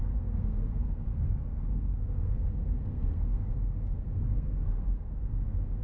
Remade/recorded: remade